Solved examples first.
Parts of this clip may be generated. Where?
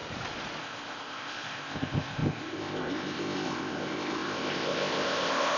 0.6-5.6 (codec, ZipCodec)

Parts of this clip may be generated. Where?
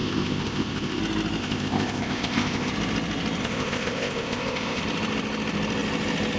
0.0-1.0 (codec, ZipCodec); 1.4-2.7; 3.4-4.8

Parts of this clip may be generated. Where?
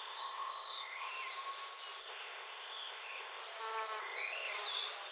0.0-1.1 (codec, ZipCodec); 2.0-3.4; 4.0-4.5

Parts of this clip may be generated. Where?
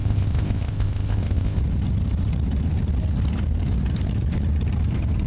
0.0-1.6 (codec, ZipCodec)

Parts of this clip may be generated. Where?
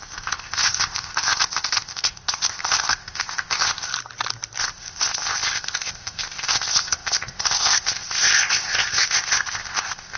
0.0-3.9 (codec, ZipCodec); 4.6-10.2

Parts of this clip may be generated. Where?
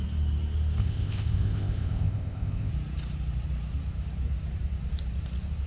0.8-2.7 (codec, ZipCodec)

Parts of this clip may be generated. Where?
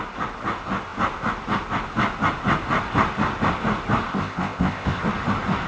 4.1-5.0 (codec, ZipCodec)